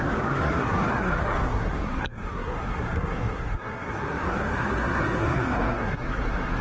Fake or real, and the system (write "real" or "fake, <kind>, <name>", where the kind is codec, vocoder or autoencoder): fake, codec, SNAC